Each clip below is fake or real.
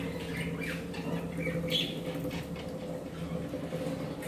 real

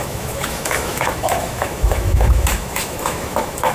fake